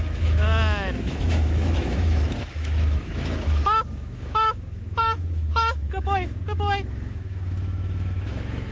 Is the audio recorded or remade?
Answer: remade